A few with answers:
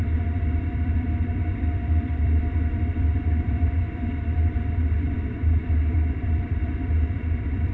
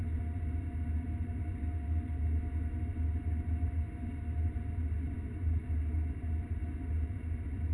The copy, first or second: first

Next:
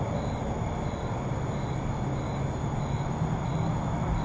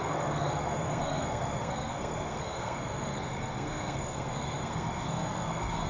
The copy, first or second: second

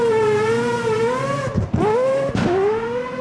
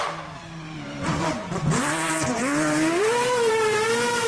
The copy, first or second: second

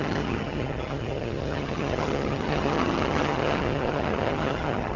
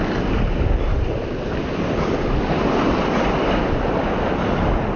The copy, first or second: first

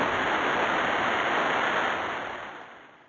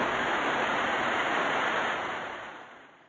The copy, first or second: second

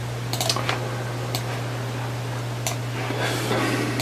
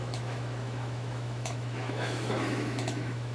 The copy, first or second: second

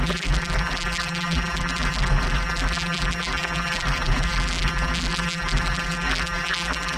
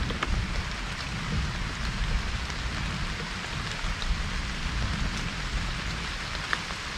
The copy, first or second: first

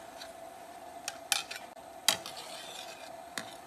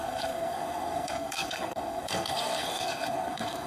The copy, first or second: second